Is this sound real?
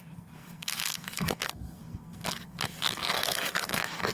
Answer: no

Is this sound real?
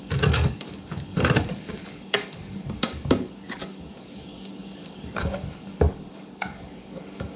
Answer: no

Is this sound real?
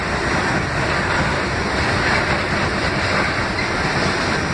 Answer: yes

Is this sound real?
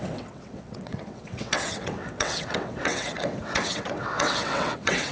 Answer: no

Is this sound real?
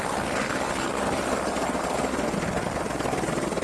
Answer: yes